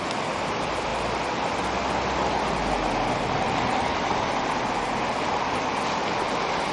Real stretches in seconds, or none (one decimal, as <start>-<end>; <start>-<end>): 0.0-6.7